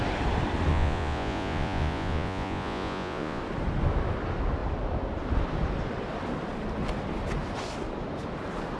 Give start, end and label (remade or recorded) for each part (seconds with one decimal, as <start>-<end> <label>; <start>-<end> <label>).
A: 0.0-0.7 recorded; 0.7-3.4 remade; 3.4-8.8 recorded